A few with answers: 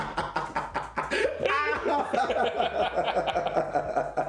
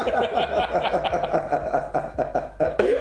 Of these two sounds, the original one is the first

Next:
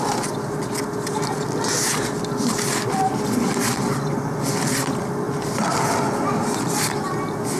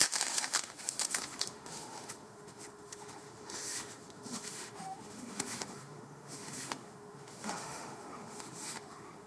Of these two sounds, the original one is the first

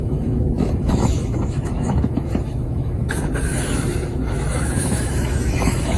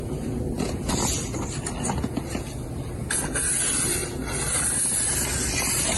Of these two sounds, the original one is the second